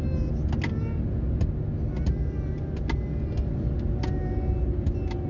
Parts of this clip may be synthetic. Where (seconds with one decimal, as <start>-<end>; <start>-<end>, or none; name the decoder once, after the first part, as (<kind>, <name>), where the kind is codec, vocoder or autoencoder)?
none